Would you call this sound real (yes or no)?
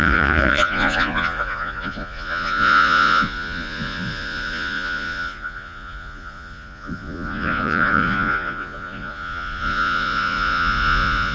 no